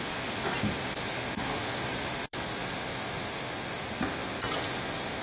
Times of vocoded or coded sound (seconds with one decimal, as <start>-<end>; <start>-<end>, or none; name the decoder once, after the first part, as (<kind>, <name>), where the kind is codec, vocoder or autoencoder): 0.0-2.6 (vocoder, BigVGAN v2); 3.3-5.2